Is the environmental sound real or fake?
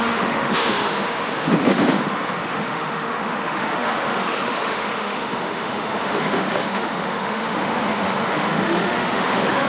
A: fake